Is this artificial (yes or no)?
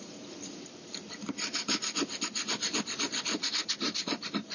yes